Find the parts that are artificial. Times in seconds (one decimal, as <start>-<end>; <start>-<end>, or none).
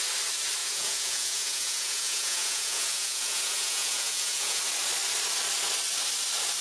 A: 0.6-4.6